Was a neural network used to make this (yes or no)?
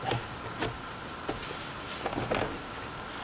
no